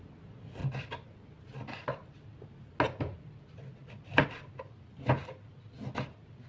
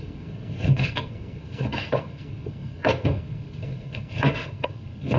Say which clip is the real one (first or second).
first